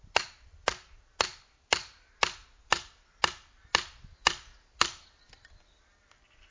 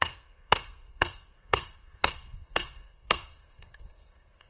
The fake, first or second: second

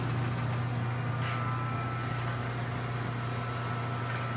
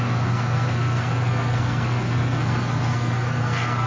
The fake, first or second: second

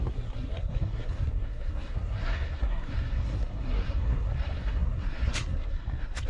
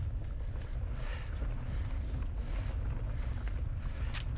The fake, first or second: first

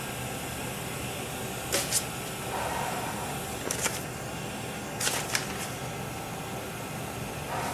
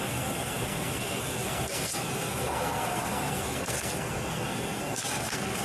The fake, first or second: second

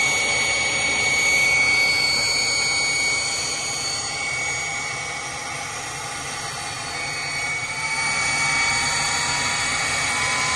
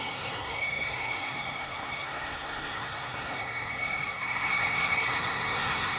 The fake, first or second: second